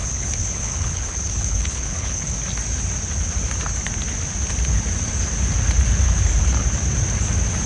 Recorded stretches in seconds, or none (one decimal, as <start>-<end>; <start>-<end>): 2.3-7.7